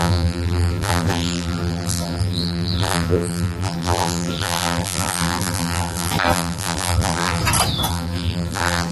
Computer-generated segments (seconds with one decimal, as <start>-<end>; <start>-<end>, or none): 0.0-7.4; 7.9-8.9